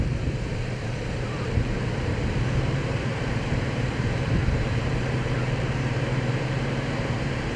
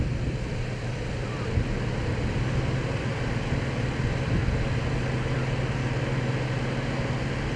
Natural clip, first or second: second